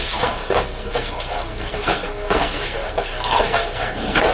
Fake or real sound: fake